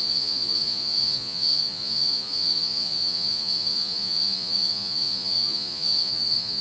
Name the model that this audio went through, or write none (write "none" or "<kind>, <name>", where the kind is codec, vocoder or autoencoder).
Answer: vocoder, Vocos